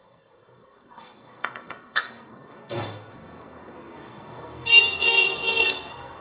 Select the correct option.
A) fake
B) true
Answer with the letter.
A